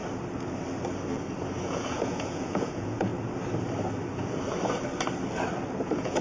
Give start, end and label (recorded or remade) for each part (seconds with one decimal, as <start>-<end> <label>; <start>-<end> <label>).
0.0-1.6 recorded; 1.6-3.1 remade; 3.1-5.8 recorded; 5.8-6.2 remade